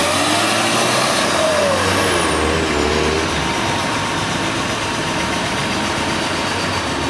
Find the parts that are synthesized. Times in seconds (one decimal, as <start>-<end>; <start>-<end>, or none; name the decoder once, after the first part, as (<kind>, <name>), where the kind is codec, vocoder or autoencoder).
1.1-1.5 (vocoder, BigVGAN v2); 3.5-7.1